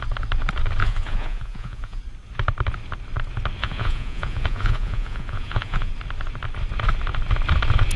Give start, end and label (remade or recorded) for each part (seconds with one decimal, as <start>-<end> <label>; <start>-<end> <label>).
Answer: 0.0-0.8 recorded; 0.8-2.0 remade; 2.0-3.6 recorded; 3.6-5.9 remade; 5.9-8.0 recorded